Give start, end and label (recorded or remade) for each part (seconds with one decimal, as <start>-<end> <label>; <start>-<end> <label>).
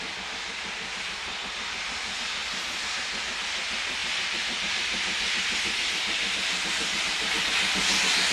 0.0-4.0 recorded; 4.0-7.3 remade; 7.3-8.3 recorded